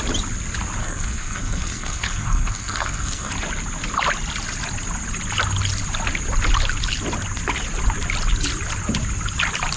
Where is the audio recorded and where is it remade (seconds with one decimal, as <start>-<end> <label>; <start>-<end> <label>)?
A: 0.0-0.8 recorded; 0.8-3.3 remade; 3.3-9.8 recorded